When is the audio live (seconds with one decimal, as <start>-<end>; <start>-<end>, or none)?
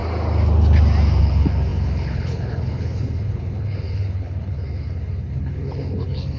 0.0-1.2